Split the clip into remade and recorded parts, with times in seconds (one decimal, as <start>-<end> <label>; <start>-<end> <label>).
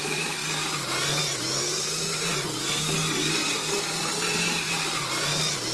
0.0-0.4 remade; 0.4-1.6 recorded; 1.6-2.3 remade; 2.3-4.0 recorded; 4.0-5.7 remade